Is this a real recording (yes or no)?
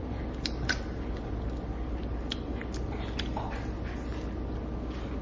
yes